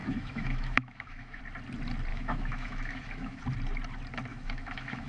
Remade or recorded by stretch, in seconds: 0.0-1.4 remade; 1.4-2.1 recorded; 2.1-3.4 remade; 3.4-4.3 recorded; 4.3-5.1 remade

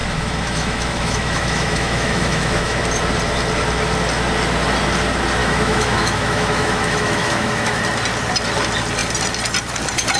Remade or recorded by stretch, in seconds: 0.0-2.8 remade; 2.8-5.4 recorded; 5.4-7.8 remade; 7.8-10.2 recorded